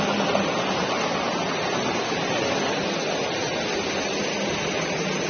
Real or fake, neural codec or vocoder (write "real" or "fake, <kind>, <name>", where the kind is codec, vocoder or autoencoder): real